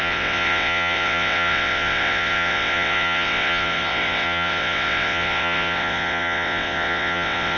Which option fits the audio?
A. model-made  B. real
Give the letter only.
A